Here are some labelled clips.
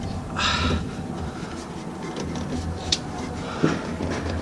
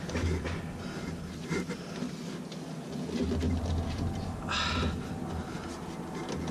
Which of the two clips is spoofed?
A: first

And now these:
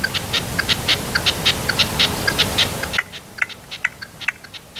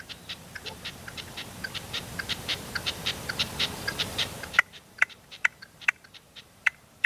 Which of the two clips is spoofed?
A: second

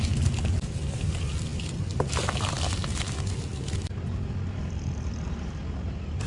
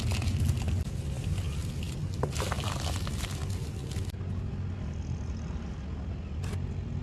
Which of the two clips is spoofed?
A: first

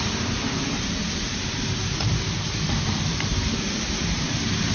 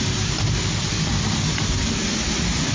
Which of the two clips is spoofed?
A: first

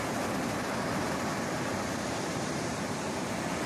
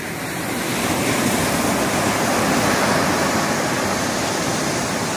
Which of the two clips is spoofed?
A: first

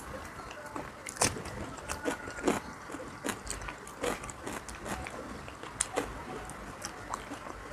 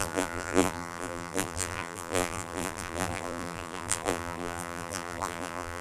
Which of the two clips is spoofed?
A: second